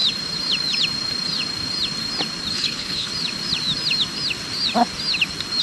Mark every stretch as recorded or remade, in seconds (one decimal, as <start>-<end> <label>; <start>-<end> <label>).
0.0-2.5 recorded; 2.5-3.1 remade; 3.1-5.6 recorded